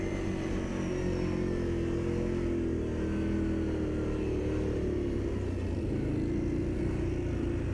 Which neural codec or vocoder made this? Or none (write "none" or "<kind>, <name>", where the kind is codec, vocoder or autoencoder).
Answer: none